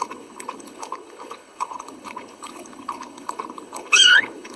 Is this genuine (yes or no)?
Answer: no